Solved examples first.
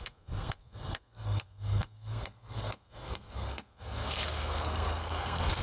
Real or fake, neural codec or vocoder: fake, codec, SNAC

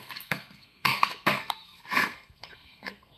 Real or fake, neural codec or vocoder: fake, codec, SNAC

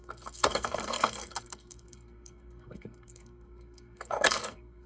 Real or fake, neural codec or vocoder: fake, codec, SNAC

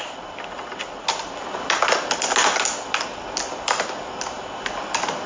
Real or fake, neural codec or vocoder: real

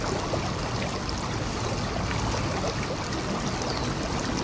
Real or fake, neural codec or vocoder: real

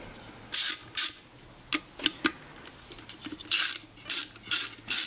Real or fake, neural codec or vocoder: real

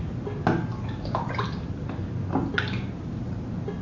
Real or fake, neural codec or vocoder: real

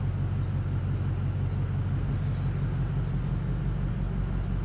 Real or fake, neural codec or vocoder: real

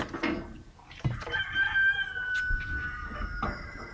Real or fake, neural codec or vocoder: real